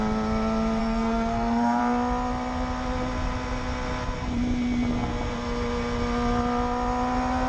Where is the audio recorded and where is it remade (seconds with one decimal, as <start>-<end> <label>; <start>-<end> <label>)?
0.0-0.8 recorded; 0.8-1.8 remade; 1.8-7.5 recorded